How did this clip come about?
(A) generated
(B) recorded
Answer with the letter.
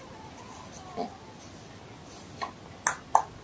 B